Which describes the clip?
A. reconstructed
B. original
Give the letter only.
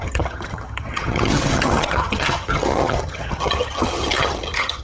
A